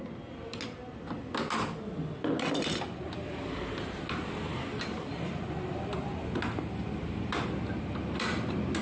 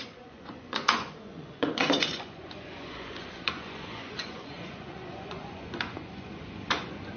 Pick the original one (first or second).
first